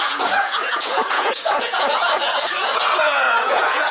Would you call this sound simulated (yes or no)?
yes